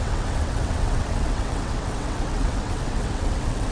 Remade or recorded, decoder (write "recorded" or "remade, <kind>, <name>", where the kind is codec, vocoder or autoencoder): remade, vocoder, WaveNeXt